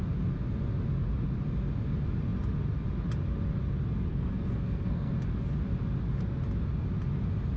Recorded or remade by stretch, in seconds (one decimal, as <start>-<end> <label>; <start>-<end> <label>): 0.0-4.1 recorded; 4.1-5.1 remade; 5.1-7.6 recorded